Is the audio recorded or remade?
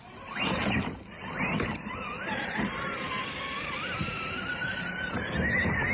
recorded